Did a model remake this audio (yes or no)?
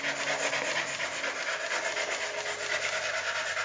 no